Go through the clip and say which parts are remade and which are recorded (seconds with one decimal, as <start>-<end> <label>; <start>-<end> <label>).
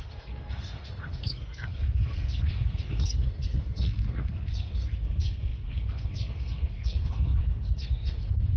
0.0-8.6 remade